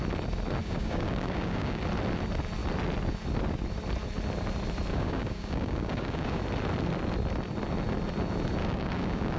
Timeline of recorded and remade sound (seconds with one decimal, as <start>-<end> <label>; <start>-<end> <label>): 0.0-0.6 recorded; 0.6-1.8 remade; 1.8-4.9 recorded; 4.9-6.4 remade; 6.4-8.6 recorded; 8.6-9.4 remade